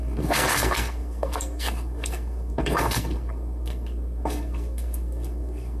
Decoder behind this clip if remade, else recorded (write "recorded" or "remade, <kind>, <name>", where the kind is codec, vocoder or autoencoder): remade, codec, SNAC